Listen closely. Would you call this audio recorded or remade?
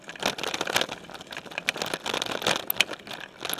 recorded